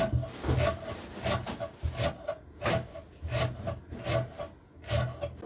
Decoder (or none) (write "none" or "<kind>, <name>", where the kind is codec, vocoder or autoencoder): none